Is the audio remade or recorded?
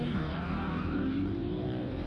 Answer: remade